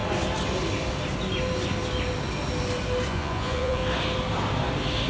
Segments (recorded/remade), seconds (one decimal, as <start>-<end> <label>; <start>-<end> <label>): 0.0-3.1 recorded; 3.1-3.8 remade; 3.8-5.1 recorded